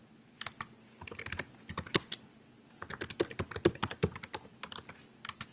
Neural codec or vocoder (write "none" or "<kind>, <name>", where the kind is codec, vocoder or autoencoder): none